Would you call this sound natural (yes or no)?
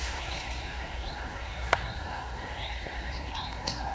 no